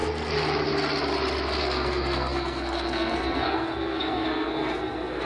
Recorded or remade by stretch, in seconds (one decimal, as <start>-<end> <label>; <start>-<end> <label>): 0.0-1.6 recorded; 1.6-5.2 remade